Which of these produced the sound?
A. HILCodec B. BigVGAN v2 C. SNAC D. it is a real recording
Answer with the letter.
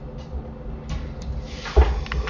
D